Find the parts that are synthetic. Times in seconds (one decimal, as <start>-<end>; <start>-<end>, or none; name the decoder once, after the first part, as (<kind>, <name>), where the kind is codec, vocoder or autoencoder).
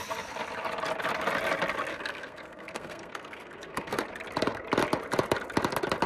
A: 1.9-4.0 (codec, SNAC)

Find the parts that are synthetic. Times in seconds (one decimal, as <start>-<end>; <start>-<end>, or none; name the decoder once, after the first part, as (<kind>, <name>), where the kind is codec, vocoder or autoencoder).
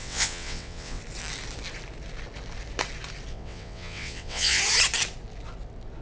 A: 0.0-1.0 (vocoder, WaveNeXt); 3.3-4.6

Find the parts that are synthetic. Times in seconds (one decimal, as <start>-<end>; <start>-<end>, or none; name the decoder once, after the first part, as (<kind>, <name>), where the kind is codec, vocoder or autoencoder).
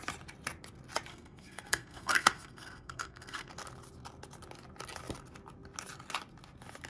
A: 1.1-3.5 (codec, SNAC)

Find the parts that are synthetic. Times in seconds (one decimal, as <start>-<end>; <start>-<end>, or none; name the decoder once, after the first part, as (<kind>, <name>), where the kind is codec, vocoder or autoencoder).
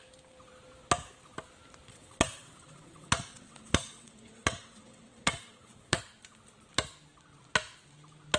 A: 1.9-6.0 (vocoder, WaveNeXt)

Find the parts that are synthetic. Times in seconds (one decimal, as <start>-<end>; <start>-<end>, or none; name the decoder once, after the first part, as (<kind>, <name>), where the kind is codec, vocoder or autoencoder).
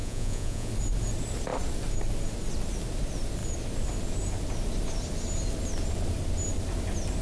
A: 0.0-0.7 (vocoder, Vocos)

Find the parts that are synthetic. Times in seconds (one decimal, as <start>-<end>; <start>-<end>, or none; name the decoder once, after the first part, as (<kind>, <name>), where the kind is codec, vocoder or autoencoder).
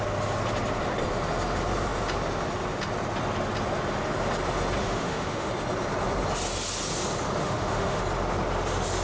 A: 4.8-5.5 (autoencoder, DAC-VAE); 7.4-8.0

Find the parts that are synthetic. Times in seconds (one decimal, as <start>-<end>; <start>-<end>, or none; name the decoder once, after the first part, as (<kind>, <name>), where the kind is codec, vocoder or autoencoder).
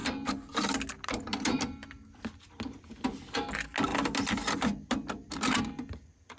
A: none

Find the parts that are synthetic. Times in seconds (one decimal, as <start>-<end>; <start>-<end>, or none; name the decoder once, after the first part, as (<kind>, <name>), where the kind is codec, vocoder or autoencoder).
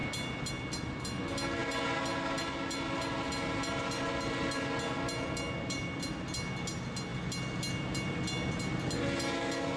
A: none